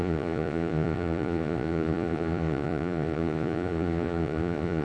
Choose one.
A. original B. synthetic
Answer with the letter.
B